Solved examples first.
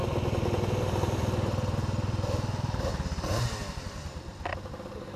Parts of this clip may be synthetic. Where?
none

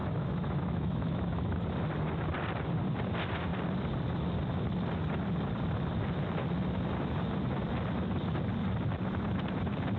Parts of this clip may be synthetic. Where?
0.0-1.6 (autoencoder, DAC-VAE)

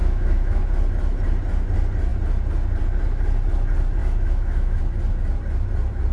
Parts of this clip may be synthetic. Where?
0.0-0.6 (autoencoder, DAC-VAE); 4.0-4.8

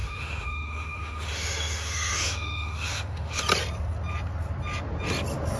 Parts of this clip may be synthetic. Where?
0.0-3.4 (autoencoder, DAC-VAE)